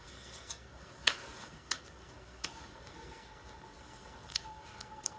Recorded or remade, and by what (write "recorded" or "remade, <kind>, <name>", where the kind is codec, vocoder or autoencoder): remade, codec, SNAC